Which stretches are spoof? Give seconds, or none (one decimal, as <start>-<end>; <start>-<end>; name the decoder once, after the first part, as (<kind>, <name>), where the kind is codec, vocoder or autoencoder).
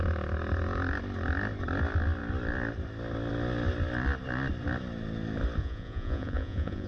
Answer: 5.6-6.9 (vocoder, Vocos)